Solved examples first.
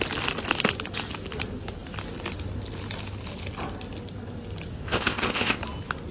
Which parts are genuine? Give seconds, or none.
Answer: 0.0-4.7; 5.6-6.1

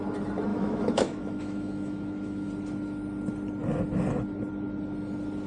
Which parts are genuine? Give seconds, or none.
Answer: 0.0-0.5; 2.5-5.5

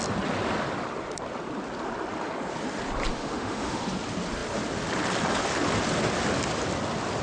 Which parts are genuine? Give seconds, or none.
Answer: 0.0-3.1; 3.8-7.2

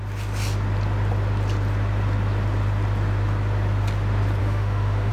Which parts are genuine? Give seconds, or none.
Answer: 0.0-4.4